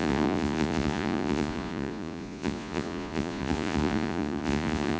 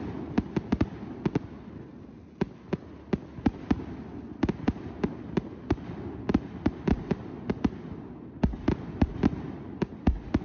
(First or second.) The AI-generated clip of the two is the first